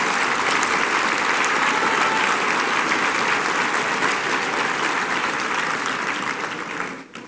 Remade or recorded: recorded